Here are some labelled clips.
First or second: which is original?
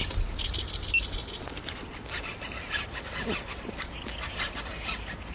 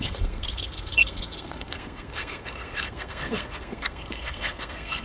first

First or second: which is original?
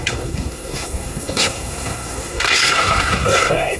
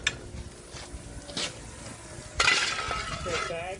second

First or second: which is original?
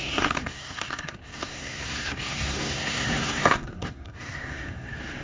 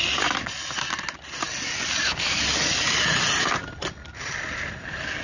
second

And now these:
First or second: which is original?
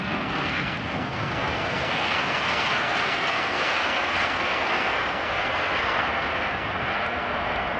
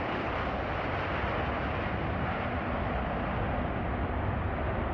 second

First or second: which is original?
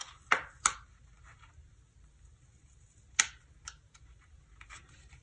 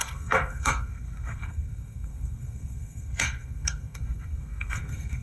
first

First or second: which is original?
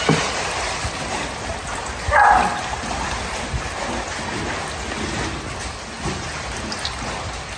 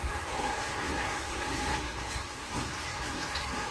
first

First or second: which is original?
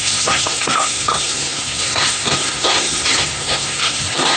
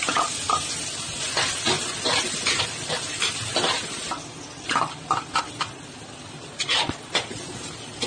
second